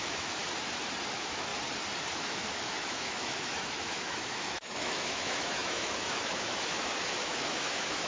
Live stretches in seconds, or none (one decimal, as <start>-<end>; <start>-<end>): 0.4-1.1; 1.5-2.1